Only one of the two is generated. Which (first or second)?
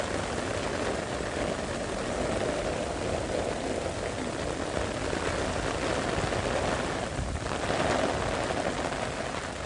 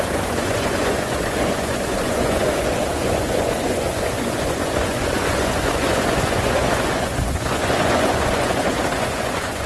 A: second